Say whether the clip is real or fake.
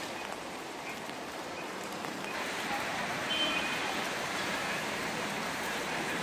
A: fake